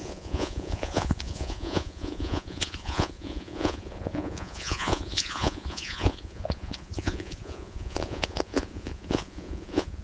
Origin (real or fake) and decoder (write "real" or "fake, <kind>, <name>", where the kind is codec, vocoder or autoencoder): fake, vocoder, Vocos